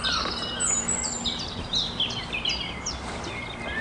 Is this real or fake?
real